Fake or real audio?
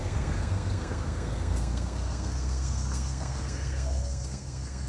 fake